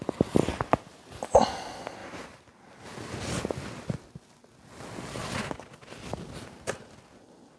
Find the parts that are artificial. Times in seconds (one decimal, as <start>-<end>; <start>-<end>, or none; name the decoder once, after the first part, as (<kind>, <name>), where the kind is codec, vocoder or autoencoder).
none